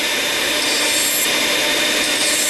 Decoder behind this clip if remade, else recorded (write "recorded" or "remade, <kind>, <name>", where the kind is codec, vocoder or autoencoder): remade, vocoder, BigVGAN v2